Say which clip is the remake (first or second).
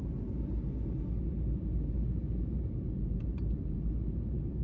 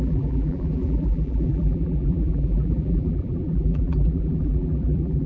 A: second